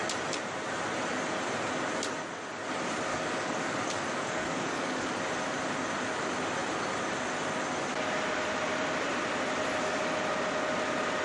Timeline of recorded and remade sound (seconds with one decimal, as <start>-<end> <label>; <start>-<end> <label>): 0.0-3.1 recorded; 3.1-5.2 remade; 5.2-11.2 recorded